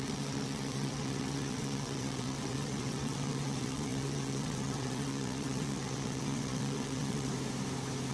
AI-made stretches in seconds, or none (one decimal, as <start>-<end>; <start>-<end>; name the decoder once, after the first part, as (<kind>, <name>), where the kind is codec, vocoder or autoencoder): 0.0-7.3 (vocoder, WaveNeXt)